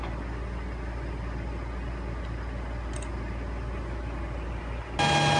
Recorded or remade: recorded